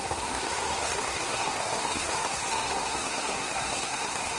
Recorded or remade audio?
remade